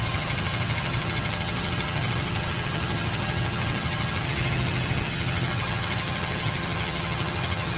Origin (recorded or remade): remade